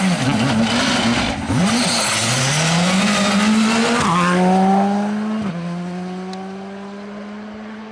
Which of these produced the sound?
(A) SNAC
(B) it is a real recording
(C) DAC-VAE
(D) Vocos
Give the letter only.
B